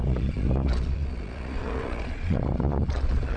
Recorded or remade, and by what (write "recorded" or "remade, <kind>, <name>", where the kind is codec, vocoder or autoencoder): remade, vocoder, Vocos